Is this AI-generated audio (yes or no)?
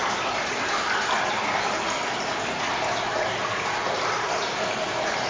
no